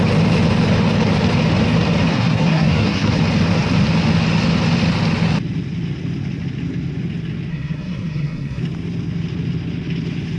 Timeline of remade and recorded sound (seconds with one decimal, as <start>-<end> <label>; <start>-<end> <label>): 0.0-2.1 recorded; 2.1-3.2 remade; 3.2-7.5 recorded; 7.5-8.6 remade; 8.6-10.4 recorded